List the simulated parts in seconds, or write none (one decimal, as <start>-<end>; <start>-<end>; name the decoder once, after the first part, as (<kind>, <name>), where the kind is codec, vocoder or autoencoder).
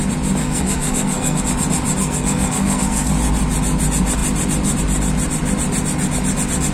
0.4-1.4 (codec, SNAC); 2.0-3.1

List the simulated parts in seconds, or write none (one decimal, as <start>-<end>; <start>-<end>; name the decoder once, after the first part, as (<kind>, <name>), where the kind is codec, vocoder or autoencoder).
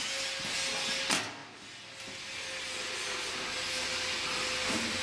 none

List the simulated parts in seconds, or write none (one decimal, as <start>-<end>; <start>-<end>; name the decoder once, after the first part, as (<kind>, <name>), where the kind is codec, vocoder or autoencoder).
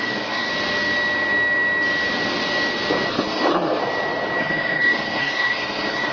0.0-0.5 (codec, SNAC); 3.1-3.8; 4.4-6.1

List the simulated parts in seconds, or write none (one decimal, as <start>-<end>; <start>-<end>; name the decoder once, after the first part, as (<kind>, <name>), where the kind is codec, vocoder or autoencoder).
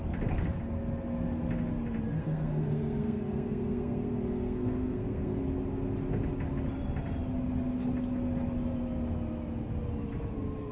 2.2-5.4 (codec, SNAC)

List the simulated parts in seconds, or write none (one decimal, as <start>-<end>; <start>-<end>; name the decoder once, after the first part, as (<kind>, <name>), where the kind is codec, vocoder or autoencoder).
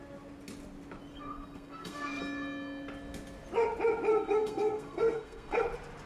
1.1-2.2 (codec, SNAC); 4.1-5.6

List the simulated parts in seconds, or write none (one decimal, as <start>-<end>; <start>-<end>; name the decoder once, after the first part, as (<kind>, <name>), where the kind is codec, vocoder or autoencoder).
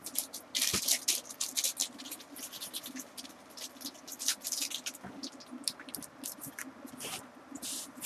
none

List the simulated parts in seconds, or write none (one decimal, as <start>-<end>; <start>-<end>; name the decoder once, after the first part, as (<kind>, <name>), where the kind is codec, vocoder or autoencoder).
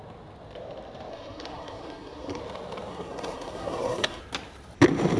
1.1-2.4 (codec, SNAC); 2.9-4.2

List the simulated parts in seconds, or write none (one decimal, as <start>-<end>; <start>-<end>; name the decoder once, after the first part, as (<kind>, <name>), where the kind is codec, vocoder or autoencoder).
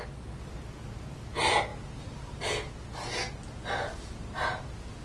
none